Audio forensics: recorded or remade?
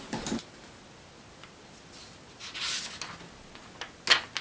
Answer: recorded